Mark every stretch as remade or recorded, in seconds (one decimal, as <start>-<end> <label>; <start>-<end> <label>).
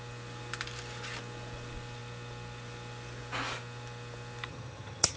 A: 0.0-4.5 recorded; 4.5-5.2 remade